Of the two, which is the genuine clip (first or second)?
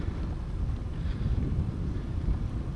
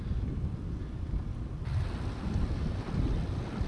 second